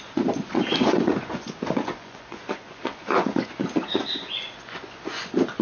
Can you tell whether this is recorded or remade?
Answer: remade